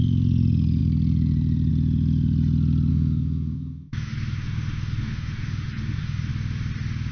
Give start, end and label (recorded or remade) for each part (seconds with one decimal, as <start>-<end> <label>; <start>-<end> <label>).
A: 0.0-2.9 recorded; 2.9-6.3 remade; 6.3-7.1 recorded